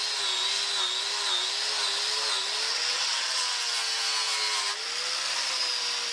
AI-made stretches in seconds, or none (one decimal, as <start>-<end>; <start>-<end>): 2.7-3.6